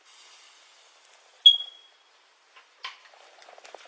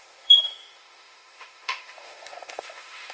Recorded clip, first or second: first